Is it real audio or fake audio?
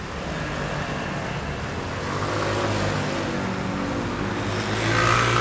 real